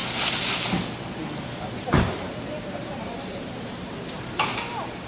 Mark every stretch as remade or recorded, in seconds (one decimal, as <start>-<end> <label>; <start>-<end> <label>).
0.0-1.7 recorded; 1.7-4.5 remade; 4.5-5.1 recorded